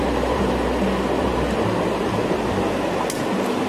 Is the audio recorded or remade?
recorded